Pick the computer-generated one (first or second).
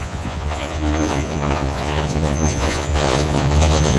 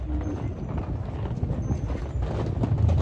first